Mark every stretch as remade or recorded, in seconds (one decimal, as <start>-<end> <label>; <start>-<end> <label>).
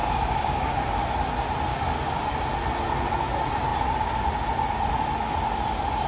0.0-0.7 remade; 0.7-1.7 recorded; 1.7-2.4 remade; 2.4-6.1 recorded